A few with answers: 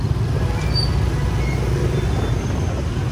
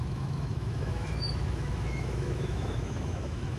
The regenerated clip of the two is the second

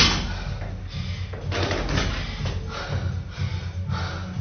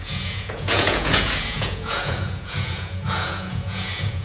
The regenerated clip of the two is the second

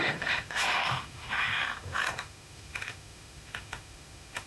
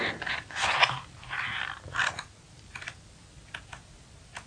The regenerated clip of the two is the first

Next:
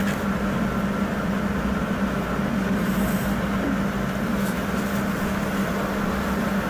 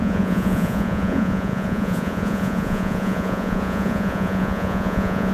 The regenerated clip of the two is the second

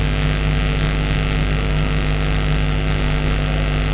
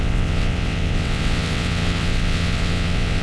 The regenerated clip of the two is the second